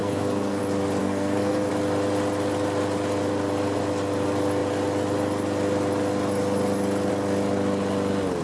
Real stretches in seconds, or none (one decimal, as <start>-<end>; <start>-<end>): 0.6-1.0; 1.7-8.4